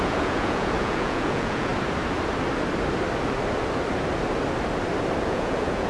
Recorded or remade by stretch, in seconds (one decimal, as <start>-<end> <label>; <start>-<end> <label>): 0.0-1.7 remade; 1.7-5.2 recorded; 5.2-5.9 remade